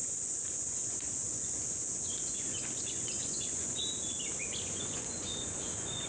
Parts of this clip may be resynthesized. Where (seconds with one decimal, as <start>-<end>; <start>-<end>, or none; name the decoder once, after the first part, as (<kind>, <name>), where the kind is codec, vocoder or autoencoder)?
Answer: 0.0-3.8 (vocoder, Vocos); 4.4-6.1